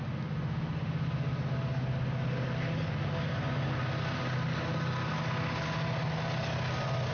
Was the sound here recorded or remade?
recorded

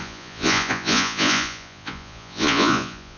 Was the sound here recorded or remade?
remade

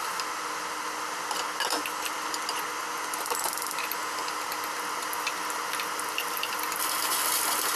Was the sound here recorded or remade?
recorded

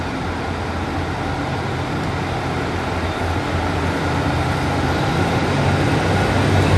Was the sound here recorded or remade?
recorded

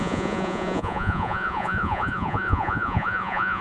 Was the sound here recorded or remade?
remade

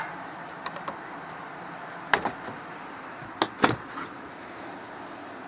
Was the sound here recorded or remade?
recorded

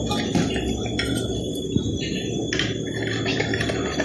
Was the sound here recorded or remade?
recorded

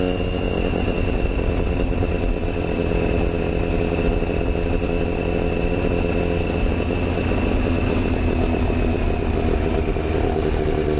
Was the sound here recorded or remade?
recorded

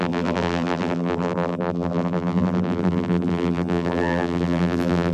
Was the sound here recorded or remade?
remade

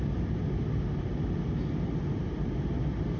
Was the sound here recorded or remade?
recorded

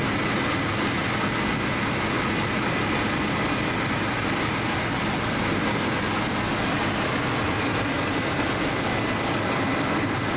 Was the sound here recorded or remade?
recorded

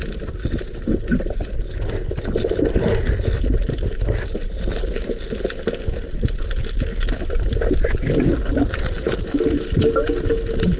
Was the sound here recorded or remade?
recorded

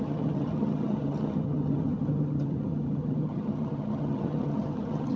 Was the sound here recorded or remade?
remade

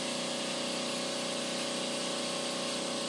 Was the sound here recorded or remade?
recorded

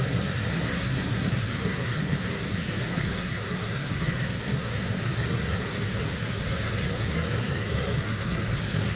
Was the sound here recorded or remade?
remade